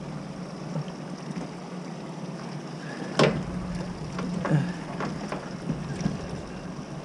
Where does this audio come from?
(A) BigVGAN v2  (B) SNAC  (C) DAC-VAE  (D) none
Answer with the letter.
D